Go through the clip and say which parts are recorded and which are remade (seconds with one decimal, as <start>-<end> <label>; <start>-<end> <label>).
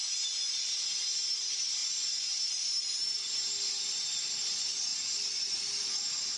0.0-6.4 recorded